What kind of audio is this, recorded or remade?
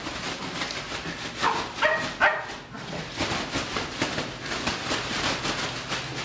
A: recorded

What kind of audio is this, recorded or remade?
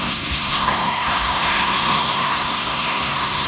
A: remade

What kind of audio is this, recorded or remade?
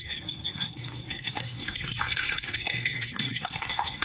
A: remade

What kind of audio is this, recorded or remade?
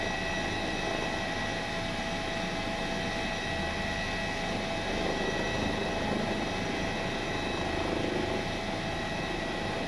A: recorded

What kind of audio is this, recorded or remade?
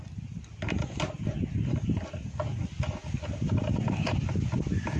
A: recorded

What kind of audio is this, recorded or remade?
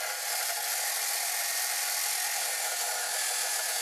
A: recorded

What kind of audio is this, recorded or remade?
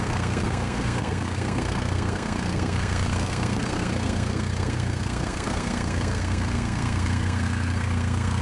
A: remade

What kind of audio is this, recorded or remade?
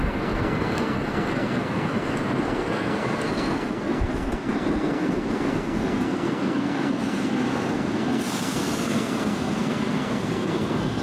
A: remade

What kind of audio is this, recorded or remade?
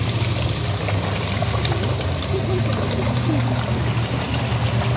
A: recorded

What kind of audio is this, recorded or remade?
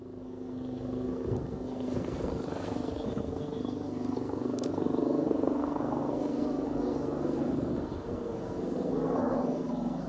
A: remade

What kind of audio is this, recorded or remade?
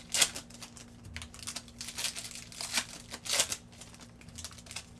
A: recorded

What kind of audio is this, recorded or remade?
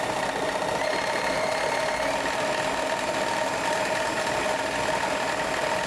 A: recorded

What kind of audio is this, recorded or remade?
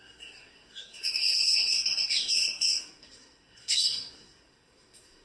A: remade